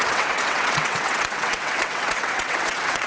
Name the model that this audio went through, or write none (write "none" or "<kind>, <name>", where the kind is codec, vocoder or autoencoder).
vocoder, WaveNeXt